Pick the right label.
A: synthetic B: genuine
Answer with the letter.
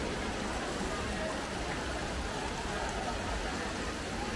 B